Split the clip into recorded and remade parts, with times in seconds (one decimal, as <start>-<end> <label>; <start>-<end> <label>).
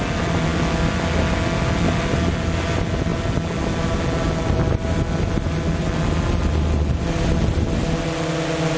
0.0-8.8 recorded